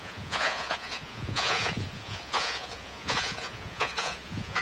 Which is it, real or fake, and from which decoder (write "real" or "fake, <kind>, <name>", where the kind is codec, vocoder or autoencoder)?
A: fake, vocoder, Vocos